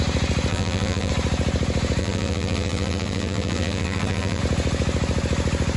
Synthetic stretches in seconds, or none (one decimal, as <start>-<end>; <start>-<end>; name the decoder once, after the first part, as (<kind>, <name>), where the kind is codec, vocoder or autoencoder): 0.5-1.1 (vocoder, BigVGAN v2); 2.0-4.4